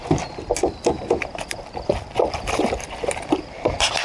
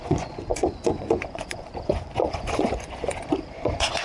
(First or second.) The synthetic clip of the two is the second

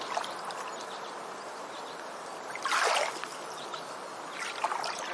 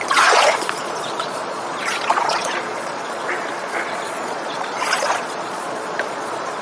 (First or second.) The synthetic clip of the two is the second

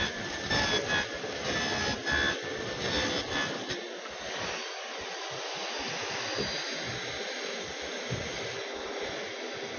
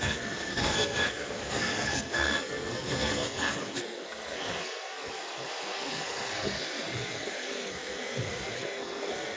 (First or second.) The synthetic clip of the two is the second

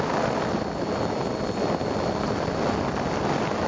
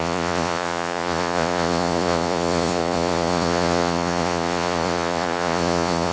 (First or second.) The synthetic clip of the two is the second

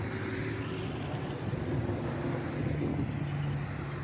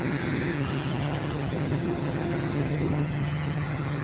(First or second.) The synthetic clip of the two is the second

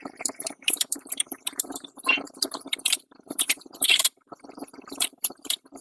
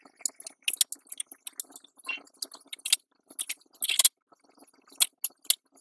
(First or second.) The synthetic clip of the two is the first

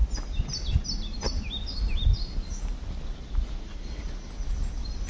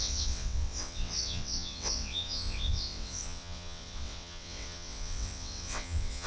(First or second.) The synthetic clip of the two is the second